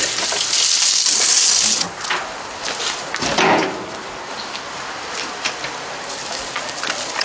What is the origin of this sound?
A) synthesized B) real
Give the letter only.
B